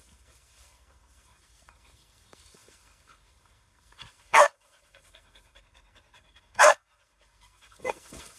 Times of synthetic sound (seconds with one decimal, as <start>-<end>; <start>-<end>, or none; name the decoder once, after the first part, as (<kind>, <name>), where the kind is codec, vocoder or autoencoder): 0.0-8.4 (codec, SNAC)